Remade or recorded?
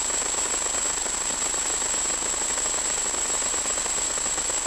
recorded